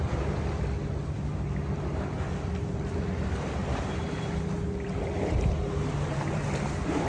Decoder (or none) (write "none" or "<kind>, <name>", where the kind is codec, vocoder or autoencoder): vocoder, BigVGAN v2